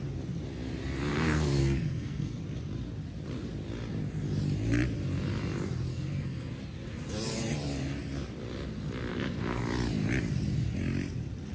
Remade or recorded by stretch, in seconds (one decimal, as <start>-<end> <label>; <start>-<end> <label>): 0.0-1.1 recorded; 1.1-2.4 remade; 2.4-5.9 recorded; 5.9-6.6 remade; 6.6-9.1 recorded; 9.1-9.6 remade; 9.6-11.5 recorded